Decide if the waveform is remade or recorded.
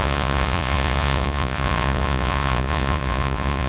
remade